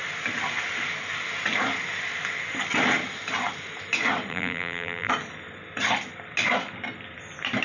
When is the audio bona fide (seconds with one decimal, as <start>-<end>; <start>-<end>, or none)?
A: 0.0-4.3; 5.1-7.6